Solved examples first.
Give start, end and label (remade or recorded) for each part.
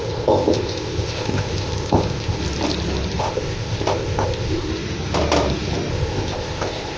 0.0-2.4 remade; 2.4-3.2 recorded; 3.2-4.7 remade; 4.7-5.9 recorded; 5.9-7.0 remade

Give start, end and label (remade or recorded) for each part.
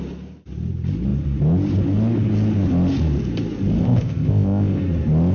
0.0-3.8 recorded; 3.8-4.8 remade; 4.8-5.3 recorded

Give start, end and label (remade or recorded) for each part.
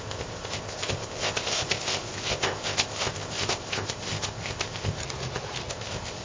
0.0-5.0 remade; 5.0-5.7 recorded; 5.7-6.2 remade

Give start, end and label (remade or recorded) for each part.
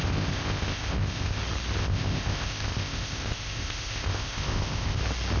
0.0-1.4 remade; 1.4-1.8 recorded; 1.8-5.0 remade; 5.0-5.4 recorded